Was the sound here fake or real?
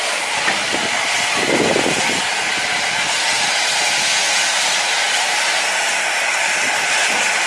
real